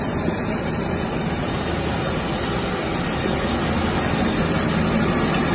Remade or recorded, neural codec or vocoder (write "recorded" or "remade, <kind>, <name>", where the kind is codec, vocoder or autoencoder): recorded